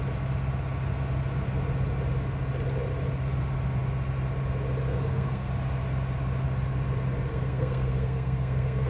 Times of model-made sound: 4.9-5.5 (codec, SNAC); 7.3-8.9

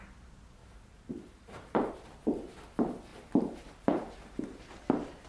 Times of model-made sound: 0.6-1.9 (vocoder, BigVGAN v2); 3.1-4.8